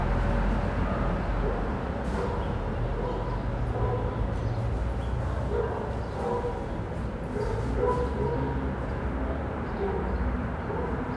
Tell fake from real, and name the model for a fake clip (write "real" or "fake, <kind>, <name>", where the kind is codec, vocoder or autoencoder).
real